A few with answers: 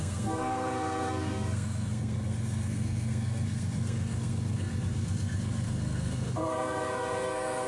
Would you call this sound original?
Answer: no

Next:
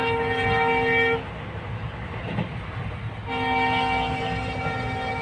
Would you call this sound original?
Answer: yes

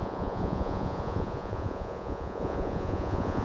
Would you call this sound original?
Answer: no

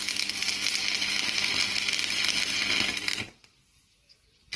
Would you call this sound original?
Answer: yes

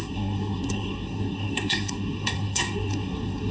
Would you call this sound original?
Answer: no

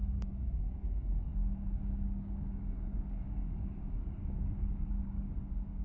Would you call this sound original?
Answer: no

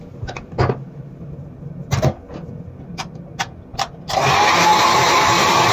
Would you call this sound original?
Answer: yes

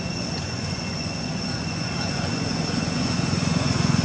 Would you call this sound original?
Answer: no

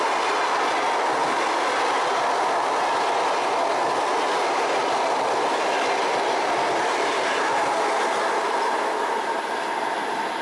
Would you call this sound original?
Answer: yes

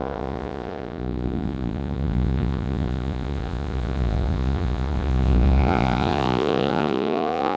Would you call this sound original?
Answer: no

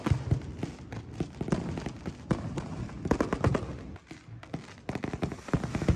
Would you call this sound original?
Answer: yes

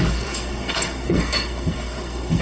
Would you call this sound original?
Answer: no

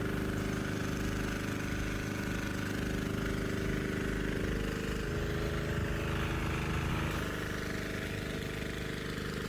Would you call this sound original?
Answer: yes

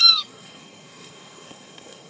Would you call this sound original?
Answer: no